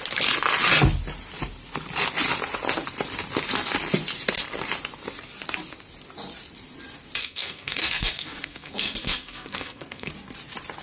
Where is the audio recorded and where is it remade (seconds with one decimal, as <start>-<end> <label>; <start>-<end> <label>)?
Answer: 0.0-7.2 recorded; 7.2-10.1 remade; 10.1-10.8 recorded